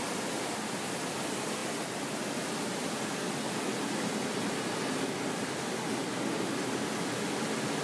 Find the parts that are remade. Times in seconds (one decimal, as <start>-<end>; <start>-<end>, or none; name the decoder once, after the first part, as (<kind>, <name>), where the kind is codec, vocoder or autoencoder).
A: none